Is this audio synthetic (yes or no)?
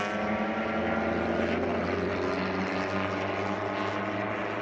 no